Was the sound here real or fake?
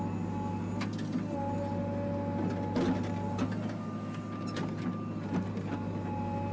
real